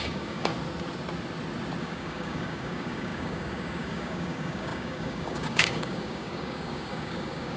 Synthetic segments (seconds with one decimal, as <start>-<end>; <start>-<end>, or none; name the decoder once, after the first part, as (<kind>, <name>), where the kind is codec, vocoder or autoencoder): 0.0-0.5 (codec, DAC); 1.8-7.6